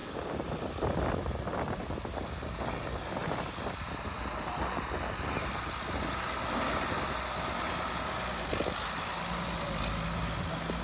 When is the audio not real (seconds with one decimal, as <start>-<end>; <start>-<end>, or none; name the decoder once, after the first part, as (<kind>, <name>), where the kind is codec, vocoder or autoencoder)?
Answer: none